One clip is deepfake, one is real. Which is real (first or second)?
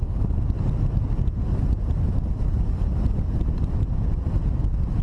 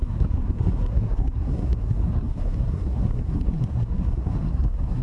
first